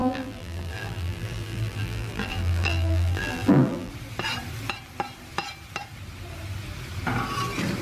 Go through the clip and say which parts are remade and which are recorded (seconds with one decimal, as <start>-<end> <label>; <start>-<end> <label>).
0.0-3.9 remade; 3.9-7.8 recorded